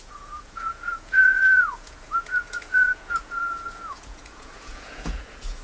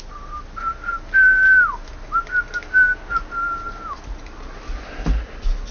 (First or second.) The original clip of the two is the second